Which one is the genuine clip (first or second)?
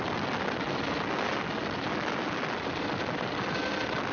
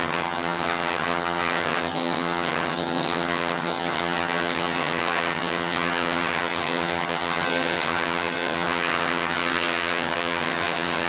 first